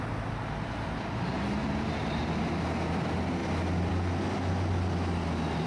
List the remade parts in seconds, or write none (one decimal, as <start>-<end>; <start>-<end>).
1.6-2.5